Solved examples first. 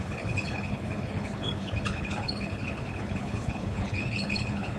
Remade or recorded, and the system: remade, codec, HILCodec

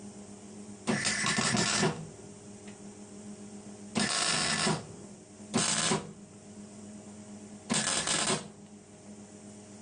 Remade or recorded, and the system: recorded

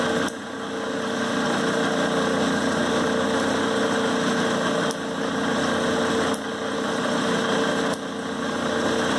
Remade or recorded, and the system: recorded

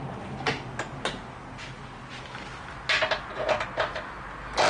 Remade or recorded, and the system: recorded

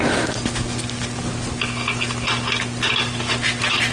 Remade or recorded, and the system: recorded